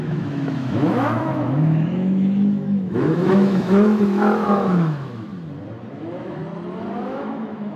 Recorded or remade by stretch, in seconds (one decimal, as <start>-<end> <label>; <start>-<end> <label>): 0.0-5.3 remade; 5.3-5.9 recorded; 5.9-6.4 remade; 6.4-7.0 recorded; 7.0-7.8 remade